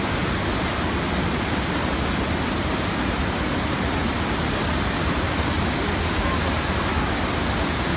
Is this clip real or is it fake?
real